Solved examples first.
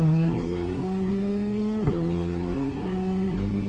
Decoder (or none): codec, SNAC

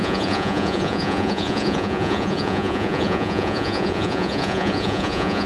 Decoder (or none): vocoder, Vocos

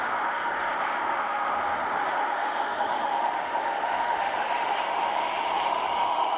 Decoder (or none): autoencoder, DAC-VAE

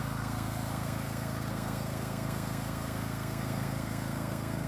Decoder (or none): codec, SNAC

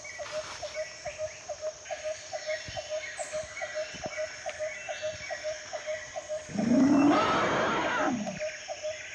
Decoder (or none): none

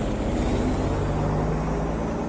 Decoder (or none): none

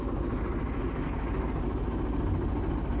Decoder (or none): none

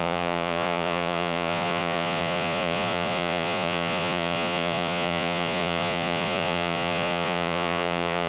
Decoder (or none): vocoder, Vocos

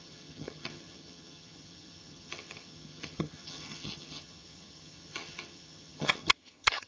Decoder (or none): vocoder, HiFi-GAN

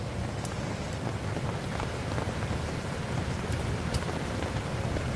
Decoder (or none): none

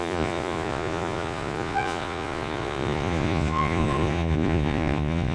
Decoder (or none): vocoder, Vocos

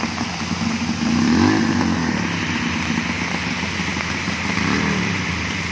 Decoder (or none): none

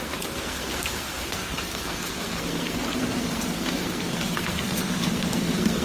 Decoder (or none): codec, SNAC